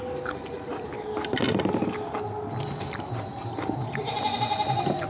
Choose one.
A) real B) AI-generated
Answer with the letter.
A